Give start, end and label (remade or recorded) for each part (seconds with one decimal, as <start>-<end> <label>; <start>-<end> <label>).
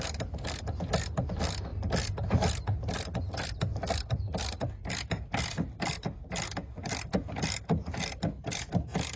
0.0-9.2 recorded